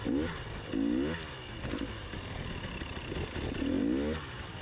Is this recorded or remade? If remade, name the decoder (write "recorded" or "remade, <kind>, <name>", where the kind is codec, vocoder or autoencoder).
recorded